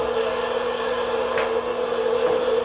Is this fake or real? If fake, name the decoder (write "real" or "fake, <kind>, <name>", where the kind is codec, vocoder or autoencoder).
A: real